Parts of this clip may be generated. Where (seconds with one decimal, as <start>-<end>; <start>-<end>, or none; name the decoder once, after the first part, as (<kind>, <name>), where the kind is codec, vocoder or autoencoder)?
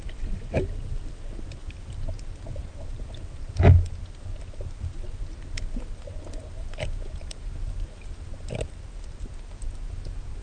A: 6.6-9.0 (vocoder, BigVGAN v2)